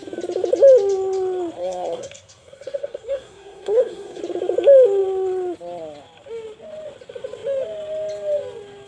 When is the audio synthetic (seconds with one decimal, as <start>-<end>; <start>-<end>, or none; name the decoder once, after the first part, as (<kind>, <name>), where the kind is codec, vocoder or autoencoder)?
1.6-4.2 (codec, SNAC)